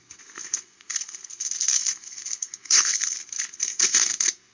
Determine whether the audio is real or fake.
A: fake